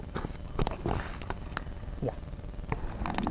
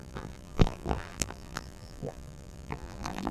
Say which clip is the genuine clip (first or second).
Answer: first